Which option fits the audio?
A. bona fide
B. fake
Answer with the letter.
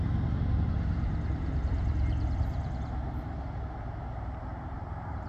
B